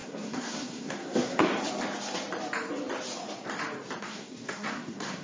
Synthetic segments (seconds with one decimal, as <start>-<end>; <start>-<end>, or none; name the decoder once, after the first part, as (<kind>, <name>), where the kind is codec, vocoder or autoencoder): 0.0-1.5 (codec, SNAC); 4.0-5.2